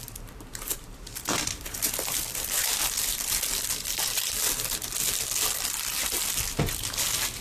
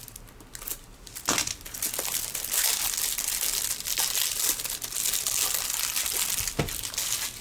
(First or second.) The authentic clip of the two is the second